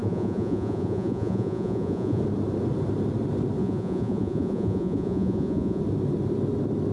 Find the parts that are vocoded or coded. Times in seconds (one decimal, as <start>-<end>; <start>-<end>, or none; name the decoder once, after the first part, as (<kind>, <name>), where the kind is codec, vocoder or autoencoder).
0.0-2.2 (vocoder, Vocos); 3.6-5.8